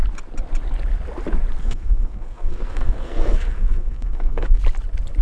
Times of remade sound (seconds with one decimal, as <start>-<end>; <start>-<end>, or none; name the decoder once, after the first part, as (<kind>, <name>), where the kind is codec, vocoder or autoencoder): 1.6-4.6 (codec, SNAC)